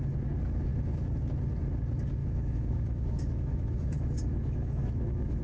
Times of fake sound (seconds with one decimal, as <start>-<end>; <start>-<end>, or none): 2.2-5.4